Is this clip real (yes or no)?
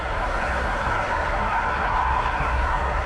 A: no